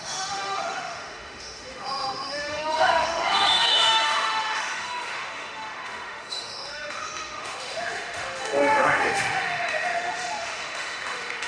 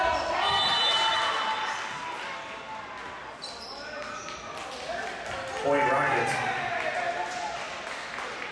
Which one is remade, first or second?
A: first